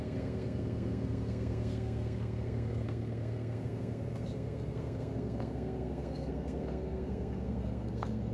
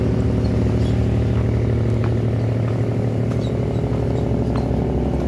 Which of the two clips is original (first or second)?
second